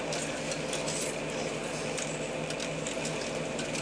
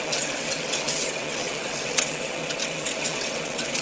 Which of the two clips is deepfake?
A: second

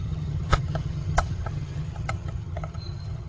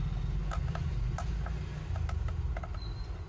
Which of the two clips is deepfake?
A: first